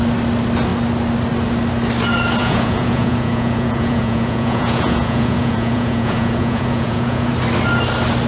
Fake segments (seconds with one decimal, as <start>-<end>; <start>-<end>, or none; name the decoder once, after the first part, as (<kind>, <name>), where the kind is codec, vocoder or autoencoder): 2.4-7.3 (vocoder, Vocos)